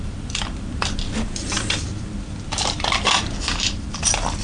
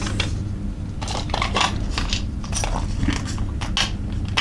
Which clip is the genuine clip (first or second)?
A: second